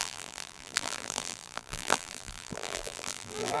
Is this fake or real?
fake